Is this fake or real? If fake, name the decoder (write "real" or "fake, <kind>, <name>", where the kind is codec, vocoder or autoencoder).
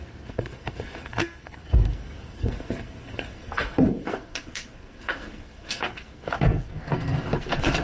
fake, codec, SNAC